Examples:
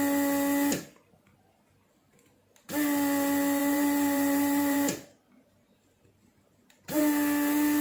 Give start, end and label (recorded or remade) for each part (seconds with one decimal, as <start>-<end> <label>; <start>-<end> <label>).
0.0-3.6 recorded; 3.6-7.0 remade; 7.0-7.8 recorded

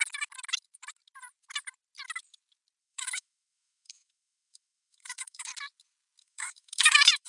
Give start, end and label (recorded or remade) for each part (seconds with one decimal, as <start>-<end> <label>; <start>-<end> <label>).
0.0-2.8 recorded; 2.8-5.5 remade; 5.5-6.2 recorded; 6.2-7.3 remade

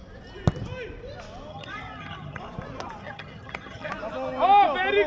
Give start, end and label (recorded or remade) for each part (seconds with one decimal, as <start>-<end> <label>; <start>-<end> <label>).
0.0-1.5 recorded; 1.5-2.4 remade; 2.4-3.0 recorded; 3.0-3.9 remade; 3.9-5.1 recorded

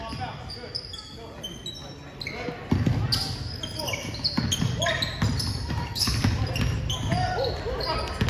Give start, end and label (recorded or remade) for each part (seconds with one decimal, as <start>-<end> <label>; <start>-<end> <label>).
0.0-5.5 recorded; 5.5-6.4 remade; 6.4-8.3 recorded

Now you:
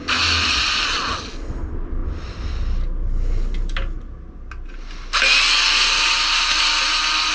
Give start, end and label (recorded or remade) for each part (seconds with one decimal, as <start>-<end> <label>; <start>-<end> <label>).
0.0-7.3 recorded

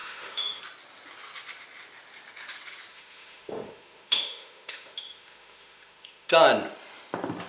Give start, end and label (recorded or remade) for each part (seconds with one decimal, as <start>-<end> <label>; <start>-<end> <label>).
0.0-0.6 remade; 0.6-2.9 recorded; 2.9-6.3 remade; 6.3-7.5 recorded

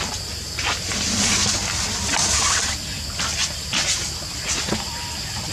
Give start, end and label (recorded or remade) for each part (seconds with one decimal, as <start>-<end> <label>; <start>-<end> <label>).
0.0-5.5 recorded

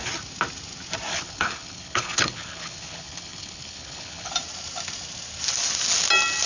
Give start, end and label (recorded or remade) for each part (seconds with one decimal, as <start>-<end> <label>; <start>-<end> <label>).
0.0-1.1 recorded; 1.1-4.3 remade; 4.3-6.5 recorded